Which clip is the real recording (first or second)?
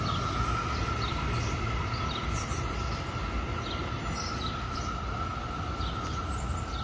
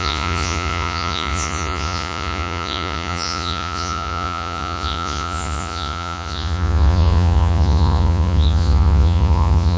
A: first